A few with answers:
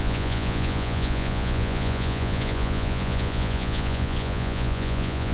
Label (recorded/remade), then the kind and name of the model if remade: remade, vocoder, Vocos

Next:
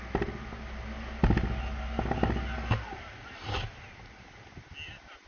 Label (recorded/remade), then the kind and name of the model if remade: recorded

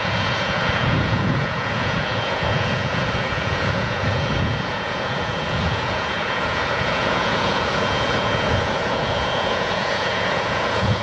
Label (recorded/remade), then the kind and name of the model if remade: remade, vocoder, Vocos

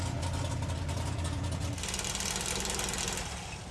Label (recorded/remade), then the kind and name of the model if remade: recorded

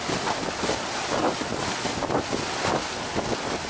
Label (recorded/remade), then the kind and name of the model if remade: recorded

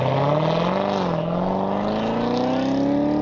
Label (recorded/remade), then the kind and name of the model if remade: recorded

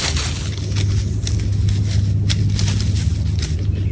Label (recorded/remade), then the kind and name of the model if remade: recorded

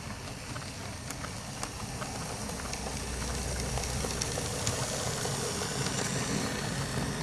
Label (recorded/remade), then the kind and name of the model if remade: recorded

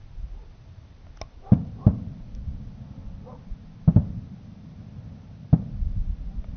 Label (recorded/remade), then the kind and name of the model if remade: recorded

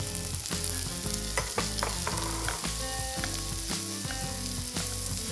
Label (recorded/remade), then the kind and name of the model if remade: recorded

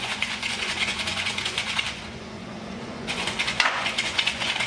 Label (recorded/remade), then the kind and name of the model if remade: remade, vocoder, Vocos